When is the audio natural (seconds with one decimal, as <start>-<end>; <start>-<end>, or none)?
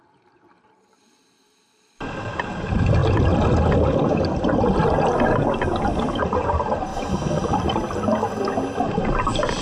3.0-4.6; 5.1-6.3; 6.9-8.8